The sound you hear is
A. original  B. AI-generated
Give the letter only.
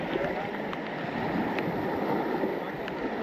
A